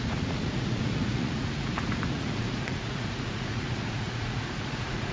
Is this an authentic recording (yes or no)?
no